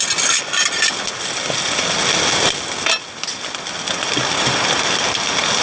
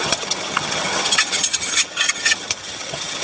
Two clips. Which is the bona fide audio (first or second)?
first